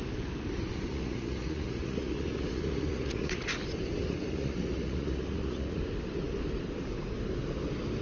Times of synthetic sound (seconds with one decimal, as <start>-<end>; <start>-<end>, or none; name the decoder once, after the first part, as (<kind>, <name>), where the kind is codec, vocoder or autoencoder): 0.9-3.4 (vocoder, Vocos); 4.0-5.8